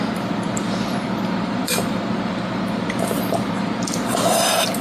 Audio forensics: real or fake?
fake